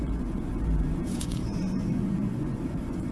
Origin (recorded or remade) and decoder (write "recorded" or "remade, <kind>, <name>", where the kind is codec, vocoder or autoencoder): remade, vocoder, Vocos